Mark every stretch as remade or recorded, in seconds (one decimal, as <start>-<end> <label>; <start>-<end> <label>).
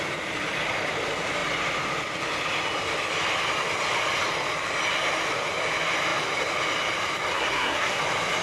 0.0-7.3 recorded; 7.3-8.0 remade; 8.0-8.4 recorded